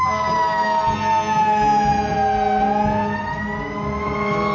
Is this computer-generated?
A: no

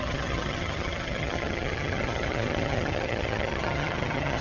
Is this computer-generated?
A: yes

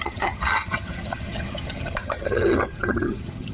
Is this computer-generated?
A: yes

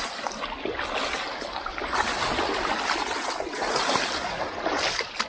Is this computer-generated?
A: no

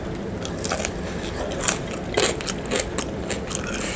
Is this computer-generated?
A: no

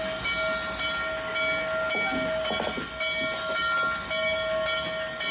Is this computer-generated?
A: no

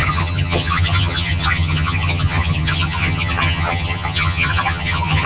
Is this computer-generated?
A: yes